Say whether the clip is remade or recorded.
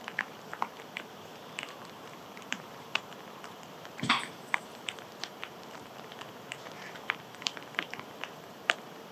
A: remade